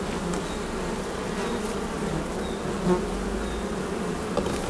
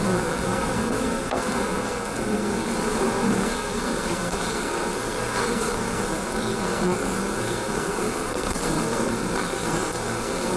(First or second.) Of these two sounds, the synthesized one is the second